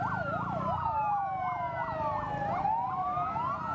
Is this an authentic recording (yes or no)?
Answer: yes